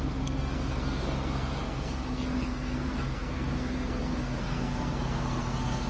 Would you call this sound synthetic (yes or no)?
yes